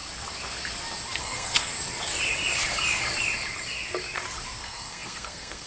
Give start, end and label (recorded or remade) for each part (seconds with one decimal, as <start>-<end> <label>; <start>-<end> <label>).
0.0-1.2 recorded; 1.2-1.7 remade; 1.7-4.6 recorded; 4.6-5.7 remade